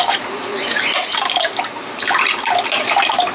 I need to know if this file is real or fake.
fake